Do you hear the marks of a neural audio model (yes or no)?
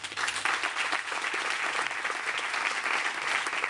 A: no